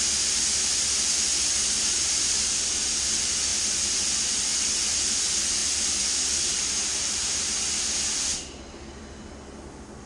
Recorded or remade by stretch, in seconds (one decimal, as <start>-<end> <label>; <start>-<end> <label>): 0.0-3.5 recorded; 3.5-4.0 remade; 4.0-4.5 recorded; 4.5-5.1 remade; 5.1-5.6 recorded; 5.6-7.8 remade; 7.8-10.1 recorded